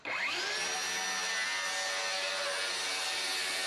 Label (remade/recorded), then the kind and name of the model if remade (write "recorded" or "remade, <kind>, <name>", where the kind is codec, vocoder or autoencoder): recorded